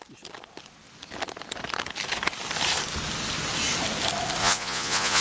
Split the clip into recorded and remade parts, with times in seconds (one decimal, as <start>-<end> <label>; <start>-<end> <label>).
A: 0.0-4.4 recorded; 4.4-5.2 remade